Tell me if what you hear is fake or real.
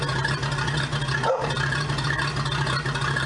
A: real